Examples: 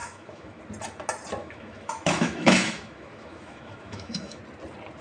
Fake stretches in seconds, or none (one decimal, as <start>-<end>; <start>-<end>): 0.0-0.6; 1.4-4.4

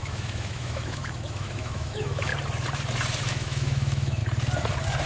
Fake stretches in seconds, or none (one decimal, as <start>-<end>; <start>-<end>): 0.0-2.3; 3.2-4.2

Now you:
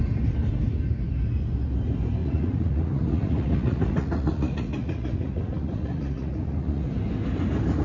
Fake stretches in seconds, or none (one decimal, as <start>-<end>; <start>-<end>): 2.2-6.9

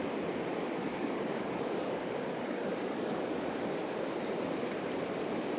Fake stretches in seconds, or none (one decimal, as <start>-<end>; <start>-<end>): 0.8-3.4